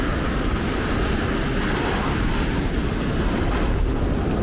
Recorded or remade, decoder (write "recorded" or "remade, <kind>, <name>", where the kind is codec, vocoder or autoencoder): recorded